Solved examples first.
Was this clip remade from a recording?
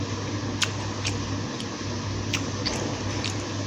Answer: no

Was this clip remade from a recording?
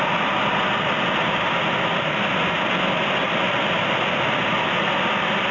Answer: no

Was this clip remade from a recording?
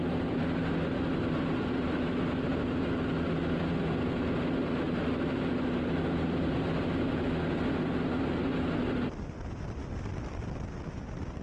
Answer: no